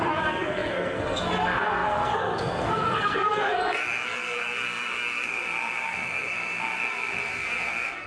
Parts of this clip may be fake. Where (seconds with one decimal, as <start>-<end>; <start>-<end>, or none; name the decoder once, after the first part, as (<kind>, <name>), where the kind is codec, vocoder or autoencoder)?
0.0-8.1 (codec, SNAC)